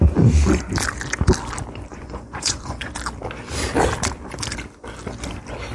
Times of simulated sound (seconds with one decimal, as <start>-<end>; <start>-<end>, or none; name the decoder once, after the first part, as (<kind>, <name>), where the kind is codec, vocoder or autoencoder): 1.9-2.9 (vocoder, Vocos)